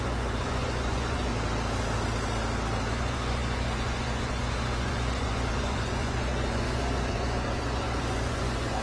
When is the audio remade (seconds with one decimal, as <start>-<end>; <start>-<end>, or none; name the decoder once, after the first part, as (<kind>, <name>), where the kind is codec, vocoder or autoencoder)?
0.0-1.3 (vocoder, Vocos); 2.9-8.8